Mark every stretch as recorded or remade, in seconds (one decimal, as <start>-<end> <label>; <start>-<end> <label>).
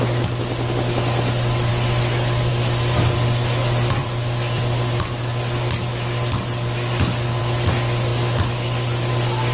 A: 0.0-9.5 recorded